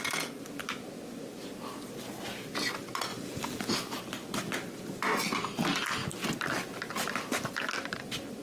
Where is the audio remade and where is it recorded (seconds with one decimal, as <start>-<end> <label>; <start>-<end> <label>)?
0.0-3.1 recorded; 3.1-3.7 remade; 3.7-8.4 recorded